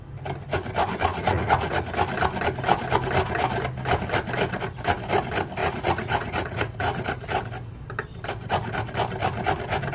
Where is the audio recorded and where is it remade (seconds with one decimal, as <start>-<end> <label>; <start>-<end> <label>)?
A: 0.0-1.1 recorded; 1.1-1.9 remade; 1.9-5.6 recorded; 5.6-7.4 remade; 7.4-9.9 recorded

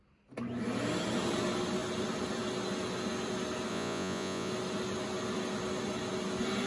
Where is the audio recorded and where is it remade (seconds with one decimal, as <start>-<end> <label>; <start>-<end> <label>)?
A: 0.0-3.7 recorded; 3.7-4.5 remade; 4.5-6.7 recorded

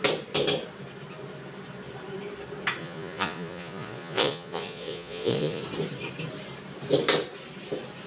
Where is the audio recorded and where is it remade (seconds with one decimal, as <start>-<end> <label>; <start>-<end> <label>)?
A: 0.0-2.8 recorded; 2.8-5.6 remade; 5.6-8.1 recorded